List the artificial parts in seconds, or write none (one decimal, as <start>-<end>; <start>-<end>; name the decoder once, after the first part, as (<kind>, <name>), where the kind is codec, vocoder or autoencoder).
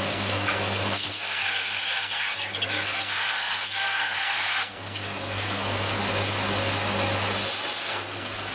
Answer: 0.0-6.0 (codec, SNAC); 7.8-8.5